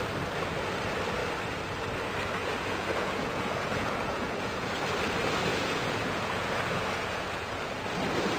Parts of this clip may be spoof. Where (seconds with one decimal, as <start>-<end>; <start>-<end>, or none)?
2.4-4.7; 5.5-7.5